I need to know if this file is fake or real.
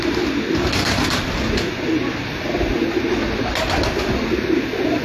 real